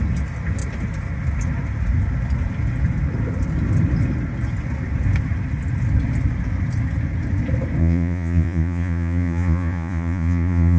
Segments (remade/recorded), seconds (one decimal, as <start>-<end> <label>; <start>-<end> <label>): 0.0-7.8 recorded; 7.8-10.8 remade